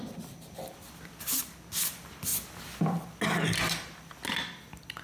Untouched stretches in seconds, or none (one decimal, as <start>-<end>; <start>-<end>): 0.0-5.0